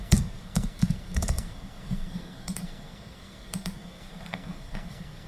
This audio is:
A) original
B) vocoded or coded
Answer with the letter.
B